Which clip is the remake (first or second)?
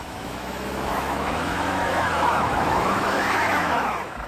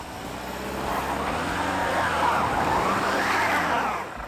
first